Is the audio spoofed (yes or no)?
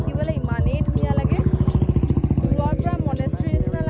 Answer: no